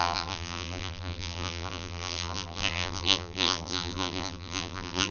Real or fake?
fake